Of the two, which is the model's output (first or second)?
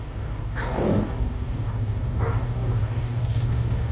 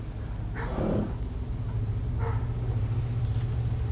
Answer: first